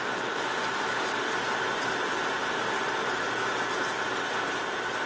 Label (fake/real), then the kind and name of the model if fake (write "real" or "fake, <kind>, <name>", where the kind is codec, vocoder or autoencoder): real